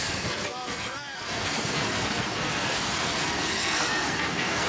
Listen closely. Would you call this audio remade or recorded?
remade